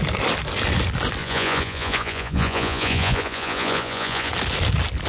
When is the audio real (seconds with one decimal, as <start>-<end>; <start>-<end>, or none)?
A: 0.0-1.2; 4.3-5.1